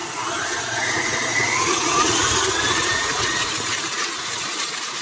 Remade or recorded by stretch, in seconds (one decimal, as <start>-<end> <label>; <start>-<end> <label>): 0.0-0.6 recorded; 0.6-5.0 remade